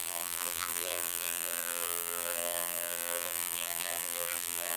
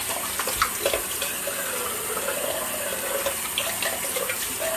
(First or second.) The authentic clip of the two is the second